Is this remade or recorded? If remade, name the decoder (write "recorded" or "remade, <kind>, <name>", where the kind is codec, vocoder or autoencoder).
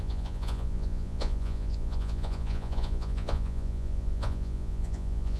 remade, vocoder, Vocos